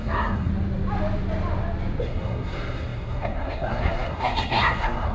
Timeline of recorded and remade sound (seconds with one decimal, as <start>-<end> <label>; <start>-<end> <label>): 0.0-0.5 remade; 0.5-2.0 recorded; 2.0-5.1 remade